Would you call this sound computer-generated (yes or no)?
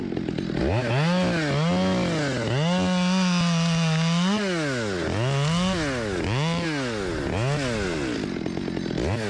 no